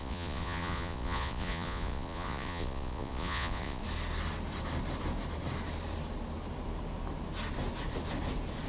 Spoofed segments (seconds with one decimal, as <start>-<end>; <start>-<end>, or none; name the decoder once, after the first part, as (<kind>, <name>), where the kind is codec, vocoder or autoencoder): 0.0-3.8 (vocoder, Vocos)

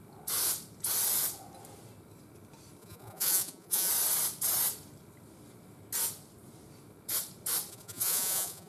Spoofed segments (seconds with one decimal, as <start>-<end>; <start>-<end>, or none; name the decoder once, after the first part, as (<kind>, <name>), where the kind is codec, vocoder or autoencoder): 2.8-3.9 (vocoder, Vocos); 7.7-8.7

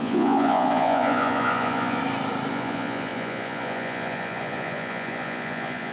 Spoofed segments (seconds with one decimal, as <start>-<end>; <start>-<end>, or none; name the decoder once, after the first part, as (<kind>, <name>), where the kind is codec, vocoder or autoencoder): 0.0-2.0 (vocoder, Vocos); 2.5-5.9

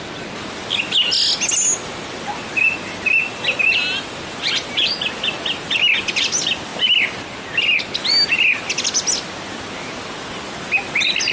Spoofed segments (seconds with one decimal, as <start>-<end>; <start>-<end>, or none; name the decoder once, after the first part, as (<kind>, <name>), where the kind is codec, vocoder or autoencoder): none

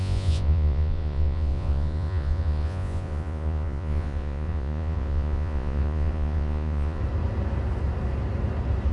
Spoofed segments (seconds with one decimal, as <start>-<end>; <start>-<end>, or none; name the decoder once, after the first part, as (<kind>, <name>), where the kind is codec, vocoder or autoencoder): 0.0-7.0 (vocoder, Vocos)